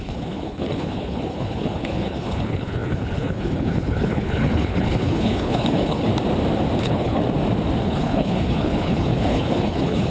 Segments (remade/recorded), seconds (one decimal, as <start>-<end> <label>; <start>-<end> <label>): 0.0-6.1 remade; 6.1-6.8 recorded; 6.8-7.2 remade; 7.2-7.8 recorded; 7.8-10.1 remade